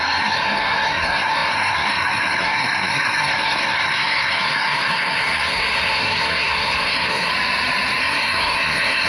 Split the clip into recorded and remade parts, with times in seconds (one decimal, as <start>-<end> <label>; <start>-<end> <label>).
0.0-7.3 remade; 7.3-8.0 recorded; 8.0-9.1 remade